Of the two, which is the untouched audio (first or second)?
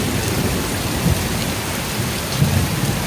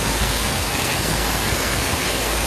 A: first